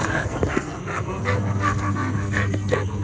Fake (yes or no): yes